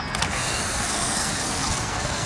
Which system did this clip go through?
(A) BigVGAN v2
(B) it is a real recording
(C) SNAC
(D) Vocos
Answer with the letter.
C